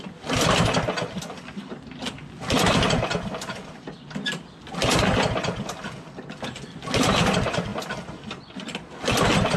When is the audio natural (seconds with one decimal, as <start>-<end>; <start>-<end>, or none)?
0.0-9.6